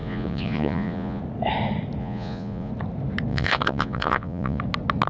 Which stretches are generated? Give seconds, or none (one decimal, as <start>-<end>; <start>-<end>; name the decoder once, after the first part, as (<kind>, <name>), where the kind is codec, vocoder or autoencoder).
0.0-1.2 (vocoder, Vocos); 2.0-2.7; 3.3-4.6